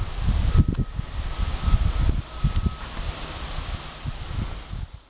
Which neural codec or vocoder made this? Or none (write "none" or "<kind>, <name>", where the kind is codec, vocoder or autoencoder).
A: none